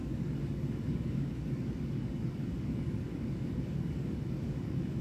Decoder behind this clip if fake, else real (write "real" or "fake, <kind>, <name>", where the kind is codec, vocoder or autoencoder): fake, codec, DAC